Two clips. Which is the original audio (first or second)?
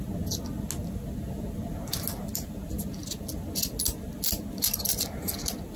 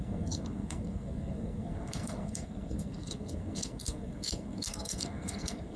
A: first